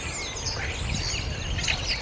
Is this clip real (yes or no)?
yes